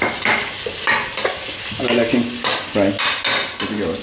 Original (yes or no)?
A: yes